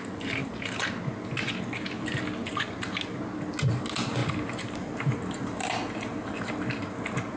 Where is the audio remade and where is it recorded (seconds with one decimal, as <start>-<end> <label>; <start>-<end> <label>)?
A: 0.0-2.4 recorded; 2.4-3.2 remade; 3.2-4.2 recorded; 4.2-6.5 remade; 6.5-7.4 recorded